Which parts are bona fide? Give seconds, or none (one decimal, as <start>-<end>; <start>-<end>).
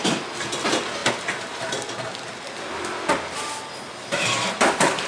0.0-5.1